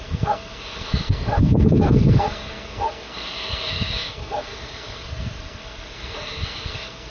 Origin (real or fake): fake